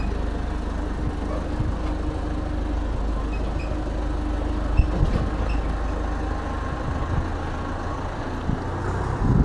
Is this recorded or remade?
recorded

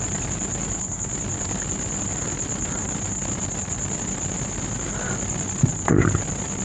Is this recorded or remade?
recorded